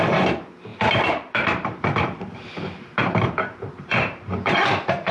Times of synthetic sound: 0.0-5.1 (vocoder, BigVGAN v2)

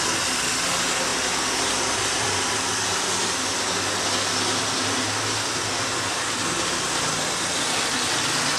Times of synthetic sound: 1.1-3.3 (vocoder, BigVGAN v2)

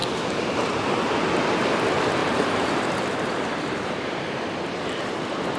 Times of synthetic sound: 0.0-0.7 (vocoder, BigVGAN v2); 2.2-4.5

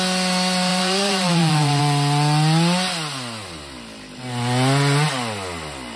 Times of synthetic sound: 0.7-1.8 (vocoder, BigVGAN v2)

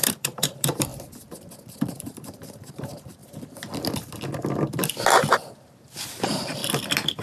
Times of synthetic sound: 0.0-0.9 (vocoder, BigVGAN v2); 1.9-3.2; 6.1-6.6

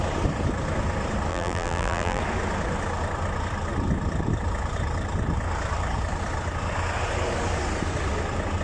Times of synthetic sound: 1.3-2.2 (vocoder, BigVGAN v2)

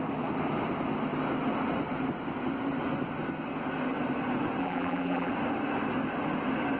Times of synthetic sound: 4.6-5.3 (vocoder, BigVGAN v2)

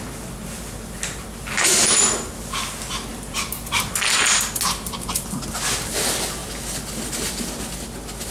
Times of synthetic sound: 3.1-3.7 (vocoder, BigVGAN v2)